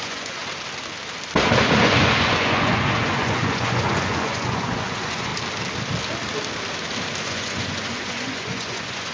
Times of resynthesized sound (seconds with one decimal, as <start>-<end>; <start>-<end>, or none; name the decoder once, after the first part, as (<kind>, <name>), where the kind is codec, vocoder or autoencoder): 0.0-0.4 (vocoder, Vocos); 1.6-5.3; 7.2-9.1